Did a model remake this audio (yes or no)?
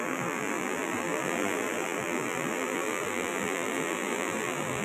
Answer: yes